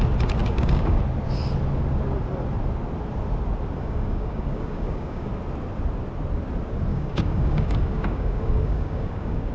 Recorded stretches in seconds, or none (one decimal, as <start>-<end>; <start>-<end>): 0.0-0.4; 1.0-3.8; 5.3-6.9